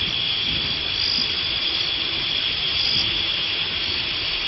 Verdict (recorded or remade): recorded